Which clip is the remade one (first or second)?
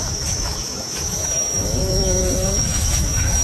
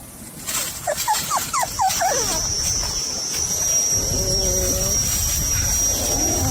first